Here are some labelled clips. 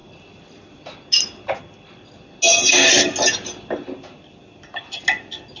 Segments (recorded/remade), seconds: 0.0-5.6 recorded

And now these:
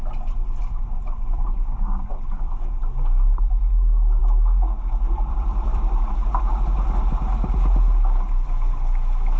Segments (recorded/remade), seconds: 0.0-0.6 recorded; 0.6-2.1 remade; 2.1-4.2 recorded; 4.2-6.3 remade; 6.3-9.4 recorded

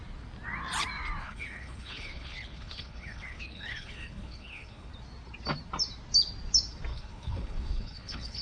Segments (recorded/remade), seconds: 0.0-1.2 recorded; 1.2-4.9 remade; 4.9-6.9 recorded; 6.9-8.4 remade